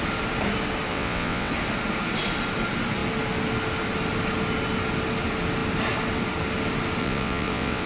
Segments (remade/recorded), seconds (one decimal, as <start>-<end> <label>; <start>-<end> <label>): 0.0-0.9 recorded; 0.9-1.5 remade; 1.5-7.0 recorded; 7.0-7.9 remade